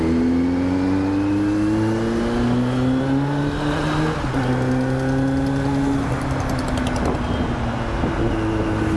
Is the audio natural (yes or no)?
yes